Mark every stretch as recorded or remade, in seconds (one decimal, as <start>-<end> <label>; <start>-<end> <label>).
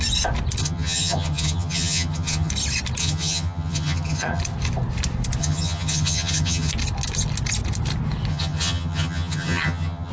0.0-0.6 recorded; 0.6-2.5 remade; 2.5-3.0 recorded; 3.0-4.4 remade; 4.4-5.4 recorded; 5.4-6.7 remade; 6.7-8.3 recorded; 8.3-10.1 remade